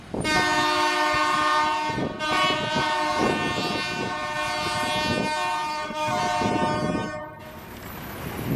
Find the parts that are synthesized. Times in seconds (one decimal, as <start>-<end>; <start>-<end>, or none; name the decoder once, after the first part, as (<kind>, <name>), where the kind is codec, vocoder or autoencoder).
5.7-6.2 (codec, SNAC)